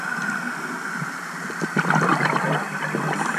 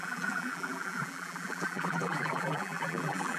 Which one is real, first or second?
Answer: first